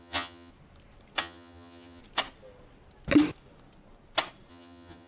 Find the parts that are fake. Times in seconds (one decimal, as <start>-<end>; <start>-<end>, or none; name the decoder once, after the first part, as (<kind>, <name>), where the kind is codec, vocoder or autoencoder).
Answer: 0.0-0.5 (vocoder, HiFi-GAN); 1.2-2.0; 4.5-5.1